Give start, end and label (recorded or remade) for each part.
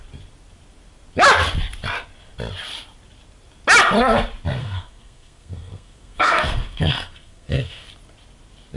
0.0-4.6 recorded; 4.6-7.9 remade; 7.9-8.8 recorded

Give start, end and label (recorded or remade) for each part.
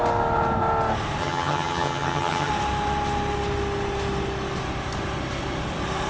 0.0-1.2 recorded; 1.2-2.5 remade; 2.5-6.1 recorded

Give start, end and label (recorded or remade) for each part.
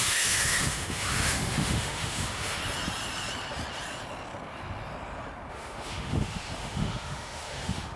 0.0-2.6 remade; 2.6-5.5 recorded; 5.5-8.0 remade